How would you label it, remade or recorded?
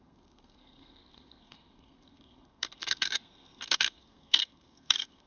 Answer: remade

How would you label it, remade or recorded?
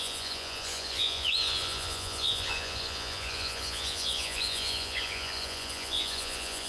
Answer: remade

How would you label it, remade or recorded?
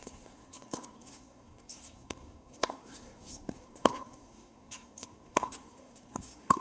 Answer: remade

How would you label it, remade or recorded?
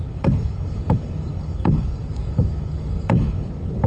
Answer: remade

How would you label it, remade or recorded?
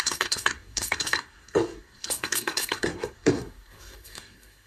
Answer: remade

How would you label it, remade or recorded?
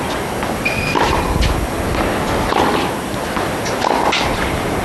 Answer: recorded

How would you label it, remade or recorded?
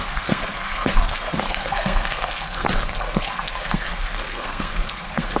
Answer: remade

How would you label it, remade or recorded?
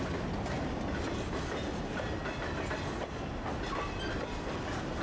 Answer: recorded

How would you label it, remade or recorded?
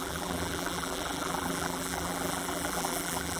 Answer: remade